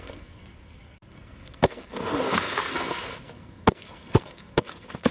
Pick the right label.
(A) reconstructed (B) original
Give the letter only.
A